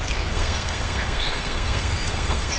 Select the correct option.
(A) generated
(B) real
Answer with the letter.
A